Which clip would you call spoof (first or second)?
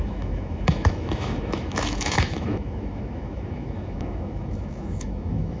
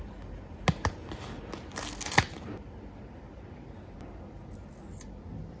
first